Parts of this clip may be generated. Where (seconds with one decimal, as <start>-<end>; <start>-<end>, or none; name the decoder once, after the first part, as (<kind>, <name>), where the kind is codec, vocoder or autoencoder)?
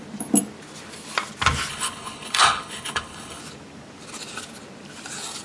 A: 1.7-3.4 (codec, HILCodec)